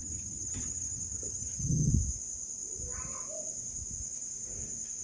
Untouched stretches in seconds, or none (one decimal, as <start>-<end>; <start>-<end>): 1.9-5.0